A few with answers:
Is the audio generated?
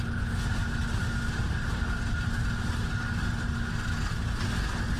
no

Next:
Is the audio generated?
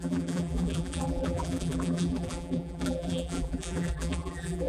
yes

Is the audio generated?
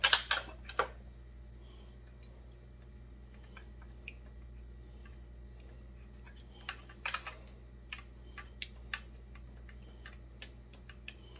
no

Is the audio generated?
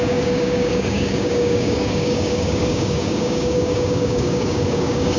yes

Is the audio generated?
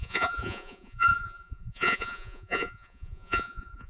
yes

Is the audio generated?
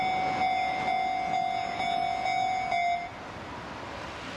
no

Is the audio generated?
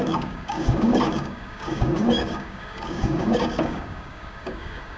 yes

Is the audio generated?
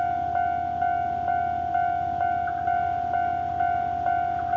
no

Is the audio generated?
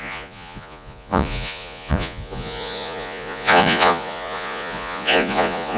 yes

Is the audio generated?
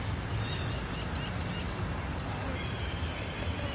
no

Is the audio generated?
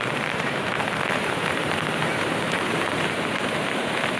yes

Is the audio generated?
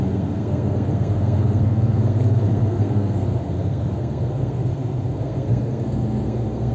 yes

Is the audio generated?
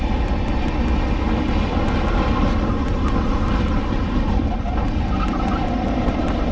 no